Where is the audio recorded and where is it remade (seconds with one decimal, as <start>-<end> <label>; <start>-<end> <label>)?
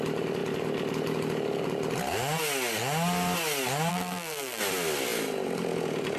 0.0-3.9 recorded; 3.9-4.6 remade; 4.6-6.2 recorded